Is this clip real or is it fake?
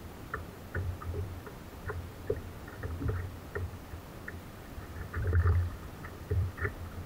fake